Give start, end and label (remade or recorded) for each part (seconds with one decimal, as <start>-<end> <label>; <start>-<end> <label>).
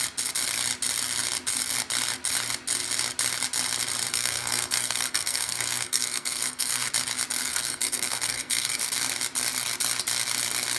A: 0.0-4.1 recorded; 4.1-6.9 remade; 6.9-7.4 recorded; 7.4-8.8 remade; 8.8-10.8 recorded